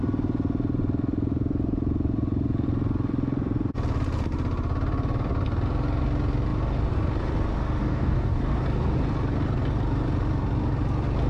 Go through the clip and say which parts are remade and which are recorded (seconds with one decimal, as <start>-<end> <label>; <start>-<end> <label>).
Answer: 0.0-7.8 recorded; 7.8-8.4 remade; 8.4-11.3 recorded